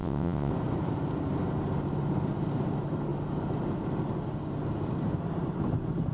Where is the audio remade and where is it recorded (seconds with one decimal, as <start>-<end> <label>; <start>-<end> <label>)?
0.0-0.5 remade; 0.5-6.1 recorded